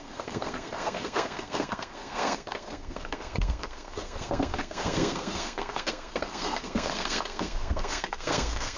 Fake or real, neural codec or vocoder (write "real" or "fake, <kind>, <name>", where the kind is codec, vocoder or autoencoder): fake, codec, SNAC